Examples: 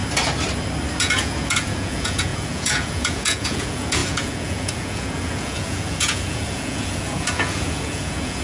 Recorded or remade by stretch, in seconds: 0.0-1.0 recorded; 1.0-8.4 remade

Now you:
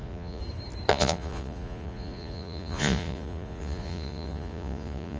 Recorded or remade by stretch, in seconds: 0.0-0.4 remade; 0.4-0.9 recorded; 0.9-5.2 remade

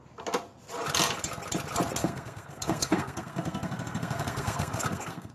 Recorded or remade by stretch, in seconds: 0.0-2.0 recorded; 2.0-5.3 remade

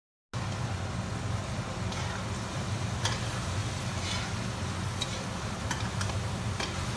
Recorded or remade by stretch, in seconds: 0.0-7.0 recorded

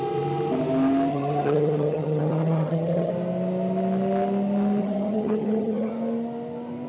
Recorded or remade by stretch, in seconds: 0.0-1.1 recorded; 1.1-3.1 remade; 3.1-4.8 recorded; 4.8-5.9 remade; 5.9-6.9 recorded

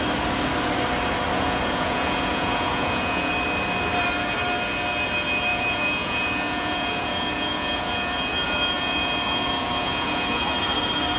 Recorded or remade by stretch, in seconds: 0.0-1.3 recorded; 1.3-3.3 remade; 3.3-5.5 recorded; 5.5-10.4 remade; 10.4-11.2 recorded

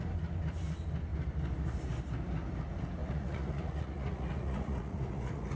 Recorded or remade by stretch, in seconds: 0.0-3.0 recorded; 3.0-5.6 remade